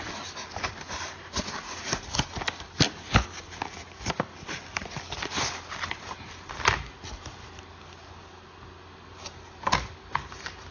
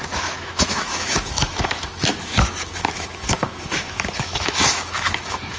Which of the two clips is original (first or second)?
first